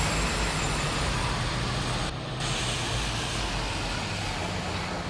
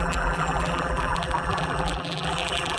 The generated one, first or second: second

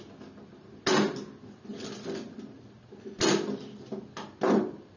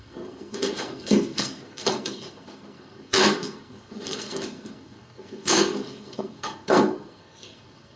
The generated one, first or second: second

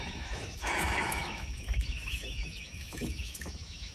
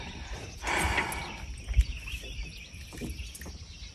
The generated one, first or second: first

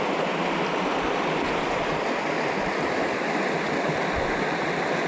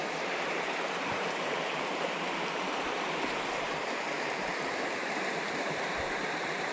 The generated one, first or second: second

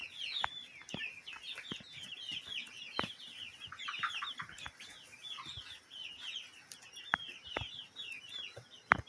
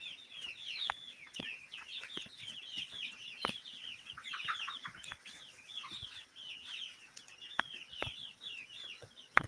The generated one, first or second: second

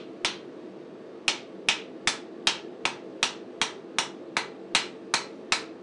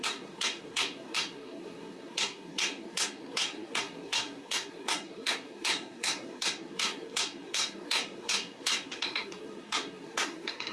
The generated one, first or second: second